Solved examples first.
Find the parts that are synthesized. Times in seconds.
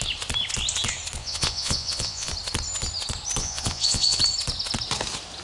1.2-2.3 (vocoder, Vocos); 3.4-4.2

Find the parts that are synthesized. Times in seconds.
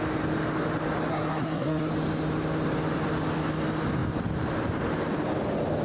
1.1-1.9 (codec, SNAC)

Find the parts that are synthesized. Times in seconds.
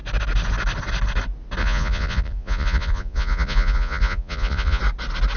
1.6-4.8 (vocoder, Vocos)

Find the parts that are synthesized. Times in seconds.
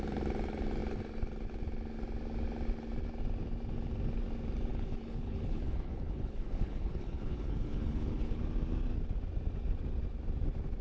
4.7-8.4 (codec, HILCodec)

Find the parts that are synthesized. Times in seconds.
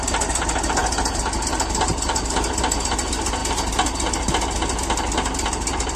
1.9-2.6 (vocoder, BigVGAN v2)